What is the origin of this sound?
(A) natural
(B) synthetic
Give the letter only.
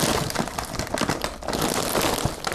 A